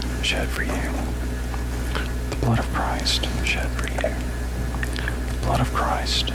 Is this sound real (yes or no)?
yes